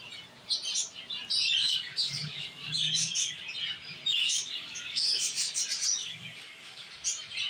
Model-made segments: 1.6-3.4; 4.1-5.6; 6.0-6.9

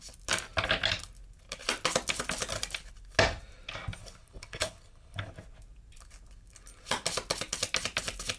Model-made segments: 4.0-5.3

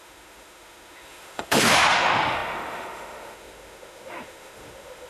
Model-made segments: 0.0-5.1

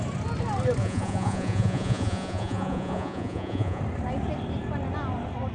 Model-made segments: 0.8-3.8

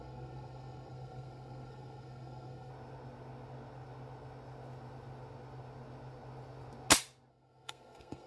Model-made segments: 0.0-2.7; 7.3-8.3

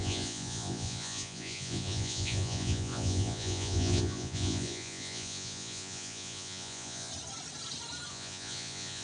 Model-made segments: 0.0-7.1; 8.1-9.0

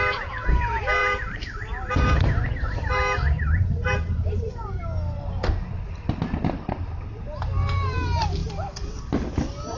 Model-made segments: 1.0-4.8